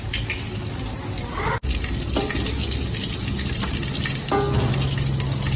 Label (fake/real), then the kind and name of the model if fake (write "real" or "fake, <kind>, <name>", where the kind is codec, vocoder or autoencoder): real